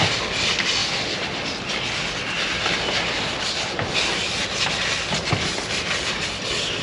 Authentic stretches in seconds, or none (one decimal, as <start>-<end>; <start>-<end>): 0.0-6.8